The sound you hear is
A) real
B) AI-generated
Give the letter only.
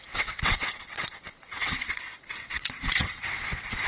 B